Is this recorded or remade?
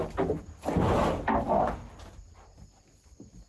recorded